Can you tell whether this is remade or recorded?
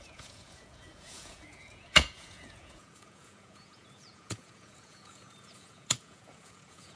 remade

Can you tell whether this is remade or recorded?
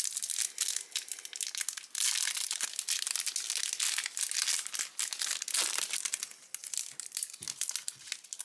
recorded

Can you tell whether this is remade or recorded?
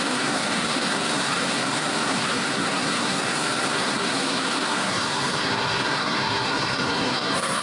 remade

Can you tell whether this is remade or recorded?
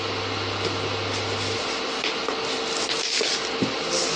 recorded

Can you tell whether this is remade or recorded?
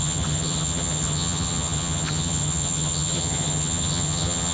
remade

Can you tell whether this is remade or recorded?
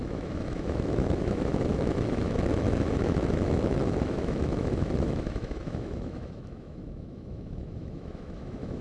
remade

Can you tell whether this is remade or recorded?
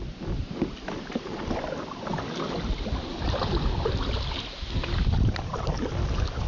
recorded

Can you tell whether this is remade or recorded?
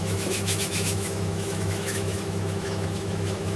remade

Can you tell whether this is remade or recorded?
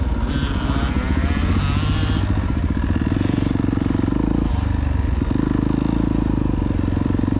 recorded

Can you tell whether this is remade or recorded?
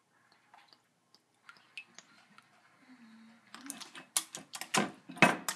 recorded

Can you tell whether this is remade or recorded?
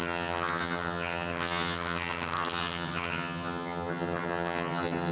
remade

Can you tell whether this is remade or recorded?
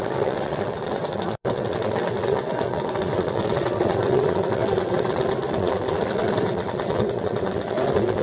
remade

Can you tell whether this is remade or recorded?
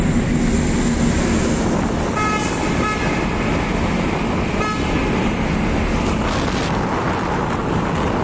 recorded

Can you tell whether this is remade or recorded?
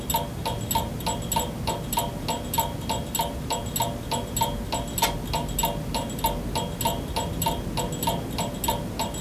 recorded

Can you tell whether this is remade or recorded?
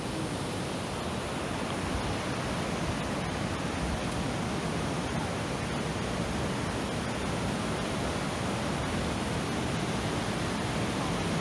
recorded